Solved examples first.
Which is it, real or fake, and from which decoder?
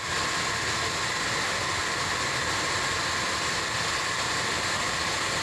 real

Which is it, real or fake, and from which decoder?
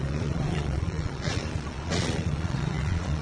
fake, vocoder, Vocos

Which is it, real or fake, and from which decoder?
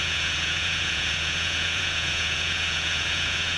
fake, vocoder, Vocos